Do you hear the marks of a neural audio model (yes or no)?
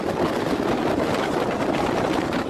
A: no